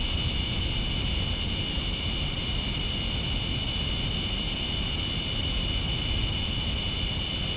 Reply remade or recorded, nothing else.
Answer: recorded